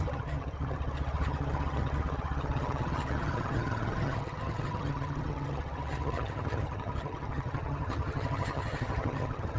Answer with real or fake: fake